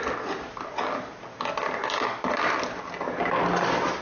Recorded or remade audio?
recorded